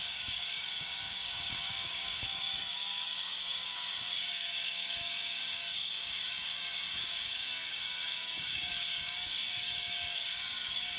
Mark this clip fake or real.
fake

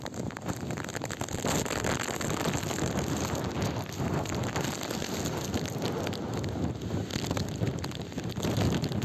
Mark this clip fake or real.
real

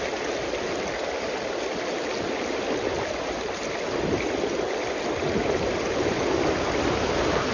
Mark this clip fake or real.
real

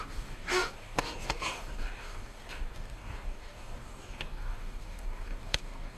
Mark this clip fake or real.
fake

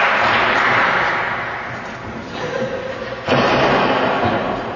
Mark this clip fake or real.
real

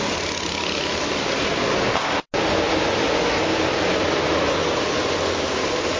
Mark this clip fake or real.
real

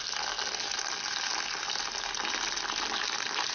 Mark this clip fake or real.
real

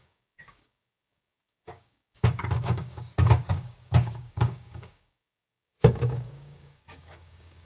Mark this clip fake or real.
fake